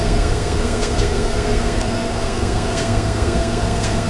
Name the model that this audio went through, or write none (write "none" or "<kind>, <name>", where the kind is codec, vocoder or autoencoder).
codec, SNAC